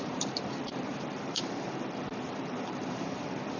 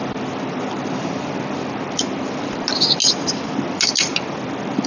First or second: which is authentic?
second